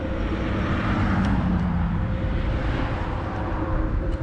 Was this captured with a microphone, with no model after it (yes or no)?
no